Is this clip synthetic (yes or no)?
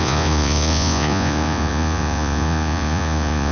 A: yes